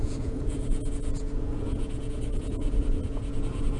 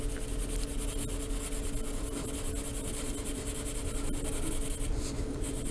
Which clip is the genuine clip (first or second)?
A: second